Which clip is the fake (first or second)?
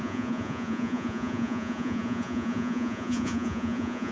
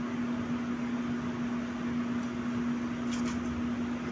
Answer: first